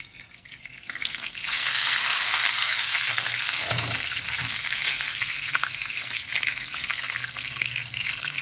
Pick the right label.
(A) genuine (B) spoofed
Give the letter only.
B